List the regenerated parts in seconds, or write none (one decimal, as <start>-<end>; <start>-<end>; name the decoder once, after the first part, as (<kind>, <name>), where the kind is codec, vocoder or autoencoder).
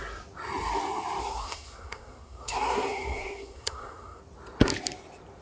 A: 1.2-4.2 (codec, SNAC)